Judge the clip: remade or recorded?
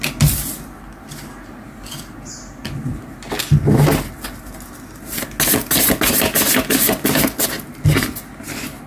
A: recorded